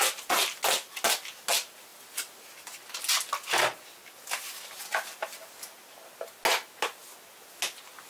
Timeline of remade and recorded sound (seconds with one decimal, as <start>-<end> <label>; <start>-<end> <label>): 0.0-8.1 recorded

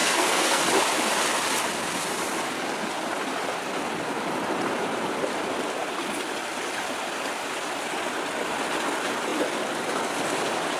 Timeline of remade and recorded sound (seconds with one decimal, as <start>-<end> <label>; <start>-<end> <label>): 0.0-0.6 remade; 0.6-10.8 recorded

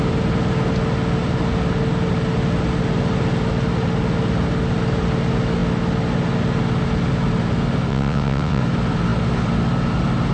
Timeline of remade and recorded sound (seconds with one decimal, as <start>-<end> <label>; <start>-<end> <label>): 0.0-7.9 recorded; 7.9-8.6 remade; 8.6-10.3 recorded

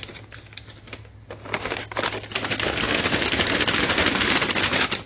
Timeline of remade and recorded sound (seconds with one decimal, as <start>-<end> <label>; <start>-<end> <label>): 0.0-5.1 recorded